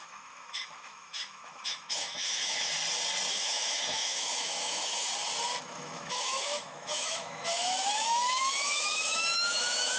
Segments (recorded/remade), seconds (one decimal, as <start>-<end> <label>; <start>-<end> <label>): 0.0-2.7 remade; 2.7-3.3 recorded; 3.3-5.1 remade; 5.1-5.6 recorded; 5.6-10.0 remade